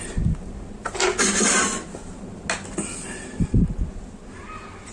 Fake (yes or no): no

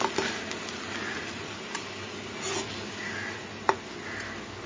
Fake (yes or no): no